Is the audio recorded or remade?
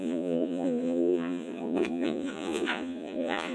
remade